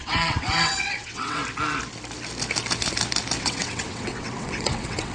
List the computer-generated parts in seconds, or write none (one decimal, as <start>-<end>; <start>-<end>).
0.0-1.4; 3.4-5.1